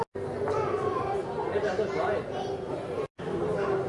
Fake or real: real